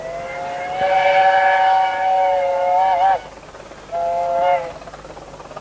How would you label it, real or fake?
real